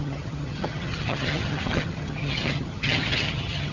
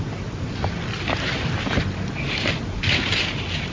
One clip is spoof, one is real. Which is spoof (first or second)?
first